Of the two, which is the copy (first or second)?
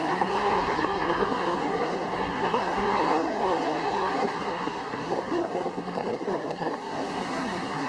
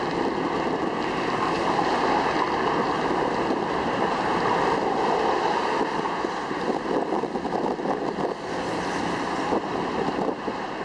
first